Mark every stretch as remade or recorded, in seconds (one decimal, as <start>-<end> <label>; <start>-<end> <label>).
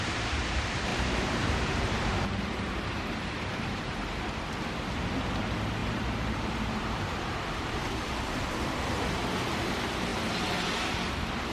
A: 0.0-0.9 recorded; 0.9-4.4 remade; 4.4-5.8 recorded; 5.8-8.9 remade; 8.9-11.5 recorded